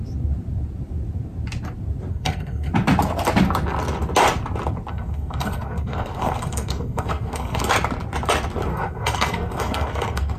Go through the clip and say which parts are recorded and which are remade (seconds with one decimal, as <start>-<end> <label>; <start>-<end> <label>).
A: 0.0-2.1 recorded; 2.1-2.7 remade; 2.7-4.9 recorded; 4.9-7.6 remade; 7.6-8.7 recorded; 8.7-10.4 remade